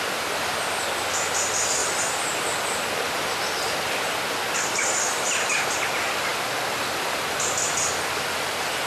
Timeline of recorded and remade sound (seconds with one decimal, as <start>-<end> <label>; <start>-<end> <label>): 0.0-8.9 recorded